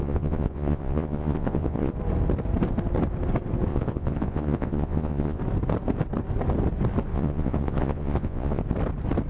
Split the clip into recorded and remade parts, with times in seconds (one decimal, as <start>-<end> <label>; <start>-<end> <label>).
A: 0.0-1.9 remade; 1.9-3.7 recorded; 3.7-5.4 remade; 5.4-7.1 recorded; 7.1-8.6 remade; 8.6-9.3 recorded